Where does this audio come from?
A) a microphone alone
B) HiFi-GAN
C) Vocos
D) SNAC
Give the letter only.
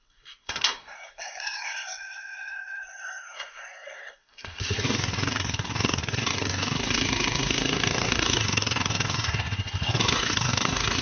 D